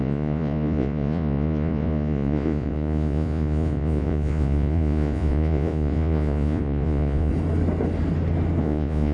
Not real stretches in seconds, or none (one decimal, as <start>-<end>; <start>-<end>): 0.0-7.3; 8.6-9.1